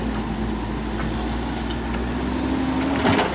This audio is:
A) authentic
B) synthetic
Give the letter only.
A